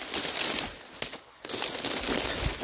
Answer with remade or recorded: recorded